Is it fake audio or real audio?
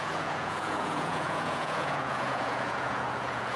fake